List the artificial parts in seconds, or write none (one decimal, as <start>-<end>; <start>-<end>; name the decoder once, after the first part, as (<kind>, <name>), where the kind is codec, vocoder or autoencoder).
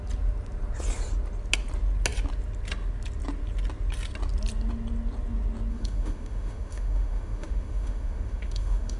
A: 5.7-9.0 (autoencoder, DAC-VAE)